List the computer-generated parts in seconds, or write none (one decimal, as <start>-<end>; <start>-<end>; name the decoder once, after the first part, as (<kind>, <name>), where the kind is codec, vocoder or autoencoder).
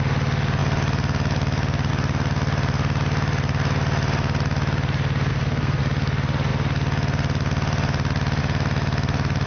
5.3-5.8 (codec, SNAC)